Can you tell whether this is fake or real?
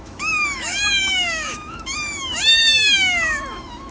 fake